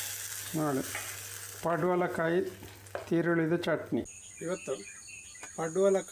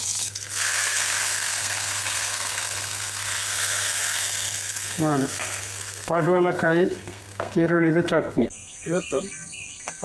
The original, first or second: first